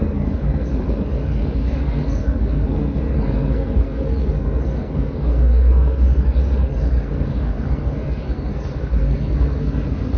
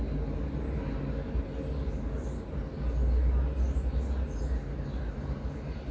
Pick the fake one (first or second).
first